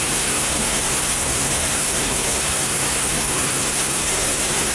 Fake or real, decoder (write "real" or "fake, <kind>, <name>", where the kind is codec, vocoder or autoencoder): fake, codec, SNAC